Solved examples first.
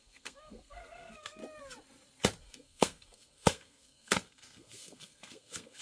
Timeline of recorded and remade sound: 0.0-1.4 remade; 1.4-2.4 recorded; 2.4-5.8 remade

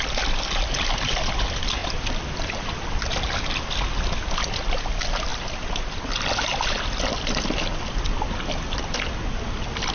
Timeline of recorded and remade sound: 0.0-9.9 recorded

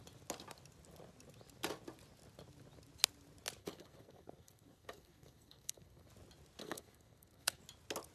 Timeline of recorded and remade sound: 0.0-3.6 recorded; 3.6-6.1 remade; 6.1-6.6 recorded; 6.6-7.6 remade; 7.6-8.1 recorded